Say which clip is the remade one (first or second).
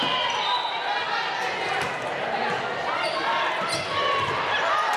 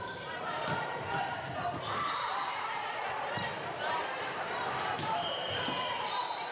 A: second